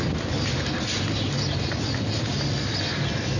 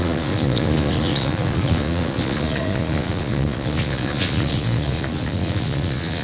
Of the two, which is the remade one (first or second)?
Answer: second